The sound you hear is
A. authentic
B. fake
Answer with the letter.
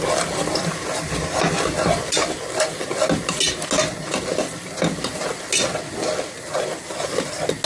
A